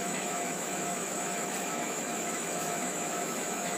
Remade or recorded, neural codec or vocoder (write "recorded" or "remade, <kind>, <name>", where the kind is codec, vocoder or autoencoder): remade, autoencoder, DAC-VAE